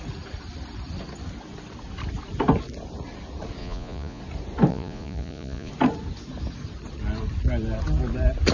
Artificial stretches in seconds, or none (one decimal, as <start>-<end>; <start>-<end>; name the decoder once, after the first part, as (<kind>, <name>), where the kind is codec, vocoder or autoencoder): 3.6-4.2 (vocoder, Vocos); 4.7-5.7